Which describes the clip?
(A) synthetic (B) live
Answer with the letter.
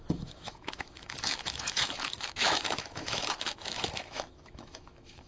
A